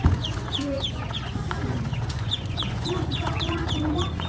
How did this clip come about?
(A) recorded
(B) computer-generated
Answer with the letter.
B